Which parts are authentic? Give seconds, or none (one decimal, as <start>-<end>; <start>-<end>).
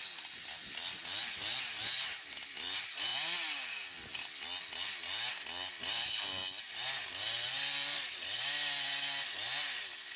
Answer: 0.0-10.2